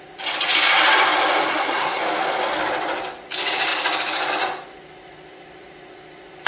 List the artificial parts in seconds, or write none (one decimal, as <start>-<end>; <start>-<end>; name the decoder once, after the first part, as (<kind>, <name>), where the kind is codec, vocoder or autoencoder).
1.5-2.0 (codec, SNAC)